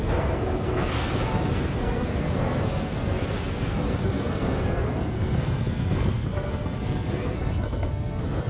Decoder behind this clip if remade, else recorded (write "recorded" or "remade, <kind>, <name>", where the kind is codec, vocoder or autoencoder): remade, codec, SNAC